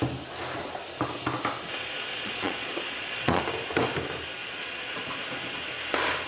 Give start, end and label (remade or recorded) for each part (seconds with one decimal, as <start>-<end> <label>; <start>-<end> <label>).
0.0-2.1 recorded; 2.1-3.4 remade; 3.4-4.4 recorded; 4.4-5.1 remade; 5.1-6.3 recorded